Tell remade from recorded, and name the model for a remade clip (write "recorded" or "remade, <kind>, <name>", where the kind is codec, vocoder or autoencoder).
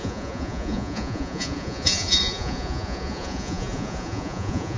remade, vocoder, Vocos